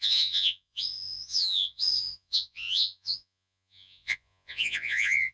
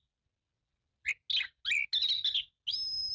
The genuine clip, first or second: second